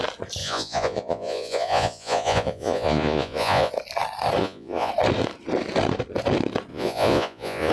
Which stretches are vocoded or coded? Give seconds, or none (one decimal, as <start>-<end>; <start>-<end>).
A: 0.4-3.7; 4.4-4.9; 6.7-7.7